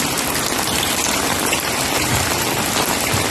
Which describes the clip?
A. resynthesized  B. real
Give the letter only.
B